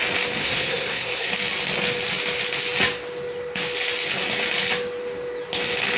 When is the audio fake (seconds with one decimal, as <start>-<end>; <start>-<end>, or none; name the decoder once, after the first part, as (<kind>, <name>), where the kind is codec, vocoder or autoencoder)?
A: 0.4-1.3 (codec, SNAC)